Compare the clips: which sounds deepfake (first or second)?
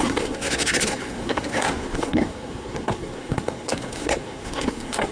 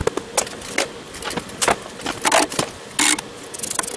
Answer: first